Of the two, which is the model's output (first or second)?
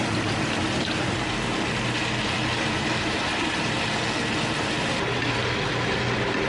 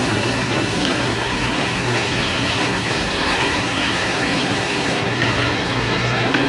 second